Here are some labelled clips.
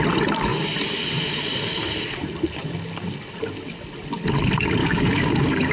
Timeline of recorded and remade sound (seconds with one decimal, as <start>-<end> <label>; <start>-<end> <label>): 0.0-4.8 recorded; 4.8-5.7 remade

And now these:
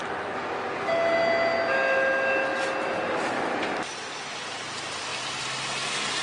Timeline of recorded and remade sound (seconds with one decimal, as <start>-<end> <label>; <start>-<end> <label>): 0.0-6.2 recorded

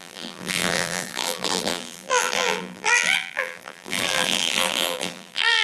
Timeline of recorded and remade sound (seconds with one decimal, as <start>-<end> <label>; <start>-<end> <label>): 0.0-5.6 remade

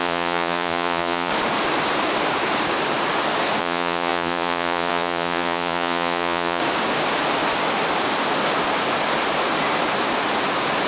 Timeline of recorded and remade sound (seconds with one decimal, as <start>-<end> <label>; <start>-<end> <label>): 0.0-1.3 remade; 1.3-3.6 recorded; 3.6-6.6 remade; 6.6-10.9 recorded

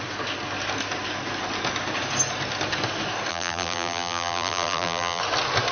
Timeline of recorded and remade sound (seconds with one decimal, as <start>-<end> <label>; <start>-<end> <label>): 0.0-3.3 recorded; 3.3-5.2 remade; 5.2-5.7 recorded

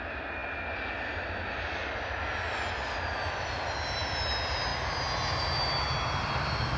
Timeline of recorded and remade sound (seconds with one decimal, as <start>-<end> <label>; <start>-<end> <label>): 0.0-6.8 recorded